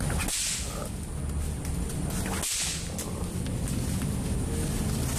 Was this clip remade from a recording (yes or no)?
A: no